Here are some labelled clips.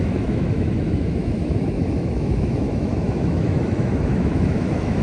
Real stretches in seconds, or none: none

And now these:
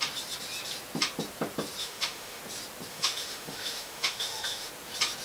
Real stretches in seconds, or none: 0.0-1.8; 2.4-2.9; 4.7-5.2

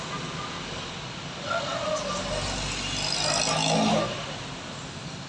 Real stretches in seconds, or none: 0.0-5.3